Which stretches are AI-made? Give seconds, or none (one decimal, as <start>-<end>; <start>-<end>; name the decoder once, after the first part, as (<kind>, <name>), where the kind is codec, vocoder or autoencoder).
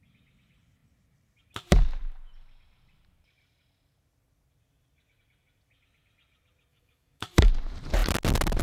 6.7-7.5 (codec, DAC)